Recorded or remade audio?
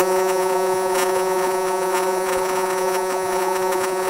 remade